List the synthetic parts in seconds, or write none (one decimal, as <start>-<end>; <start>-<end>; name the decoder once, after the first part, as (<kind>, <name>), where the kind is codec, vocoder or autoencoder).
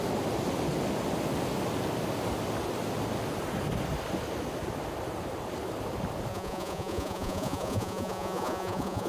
6.3-9.1 (vocoder, Vocos)